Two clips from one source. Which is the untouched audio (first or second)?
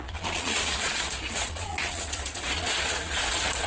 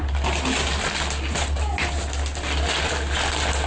second